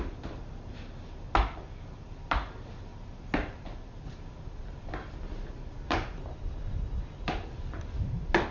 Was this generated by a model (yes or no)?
no